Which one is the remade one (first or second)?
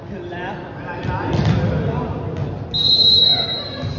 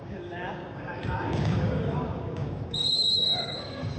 second